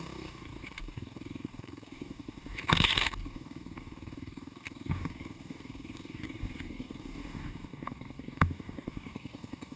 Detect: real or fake fake